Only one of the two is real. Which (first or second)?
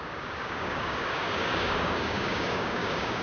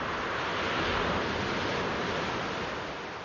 second